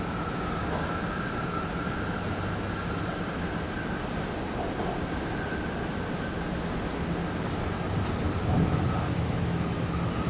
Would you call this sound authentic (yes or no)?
yes